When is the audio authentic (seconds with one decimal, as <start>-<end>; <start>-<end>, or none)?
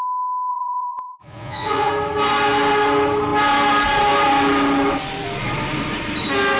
0.0-0.5; 1.9-6.6